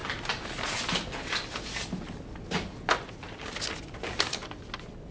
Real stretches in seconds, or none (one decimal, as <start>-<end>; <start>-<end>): 0.0-5.1